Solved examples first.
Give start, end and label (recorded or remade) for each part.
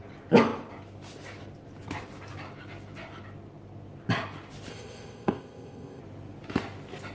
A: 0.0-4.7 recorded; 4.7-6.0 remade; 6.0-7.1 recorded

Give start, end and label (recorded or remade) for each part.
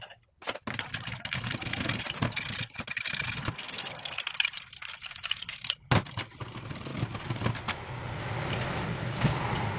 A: 0.0-9.8 recorded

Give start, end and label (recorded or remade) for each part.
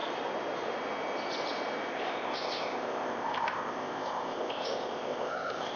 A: 0.0-1.9 recorded; 1.9-5.8 remade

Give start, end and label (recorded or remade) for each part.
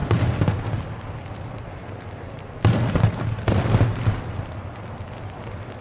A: 0.0-5.8 recorded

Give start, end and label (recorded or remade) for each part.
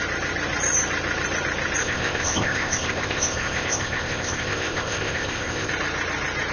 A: 0.0-1.8 recorded; 1.8-5.7 remade; 5.7-6.5 recorded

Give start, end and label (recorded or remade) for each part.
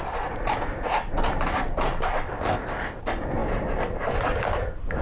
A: 0.0-2.3 recorded; 2.3-3.0 remade; 3.0-5.0 recorded